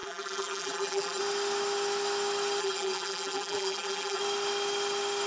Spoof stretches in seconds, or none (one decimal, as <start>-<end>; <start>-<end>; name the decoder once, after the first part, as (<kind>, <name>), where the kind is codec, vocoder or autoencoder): 0.0-1.2 (vocoder, BigVGAN v2); 2.6-4.2